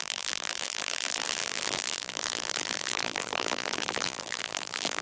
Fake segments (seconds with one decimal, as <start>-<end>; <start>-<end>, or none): 0.0-5.0